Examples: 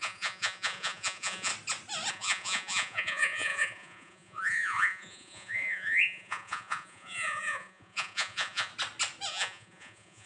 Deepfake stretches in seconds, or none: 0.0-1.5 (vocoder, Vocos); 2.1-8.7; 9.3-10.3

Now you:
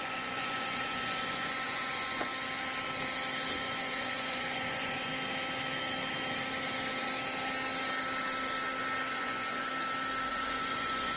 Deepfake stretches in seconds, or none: 0.0-2.3 (vocoder, Vocos); 3.5-5.1; 9.1-9.7; 10.3-11.2

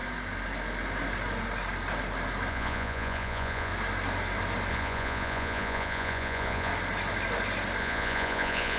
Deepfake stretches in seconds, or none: 2.5-3.7 (vocoder, Vocos); 4.7-6.7; 7.8-8.8

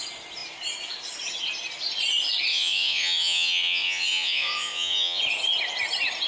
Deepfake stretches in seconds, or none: 2.5-5.2 (vocoder, Vocos)

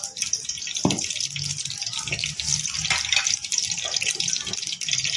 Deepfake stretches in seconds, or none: none

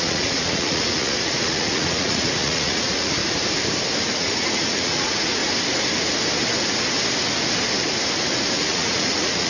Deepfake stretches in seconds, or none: 0.0-3.2 (vocoder, Vocos); 4.2-5.4; 8.5-9.5